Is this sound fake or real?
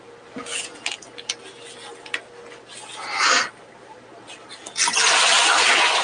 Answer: real